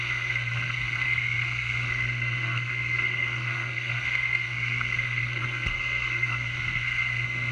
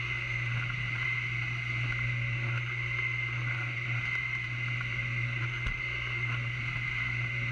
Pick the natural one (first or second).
second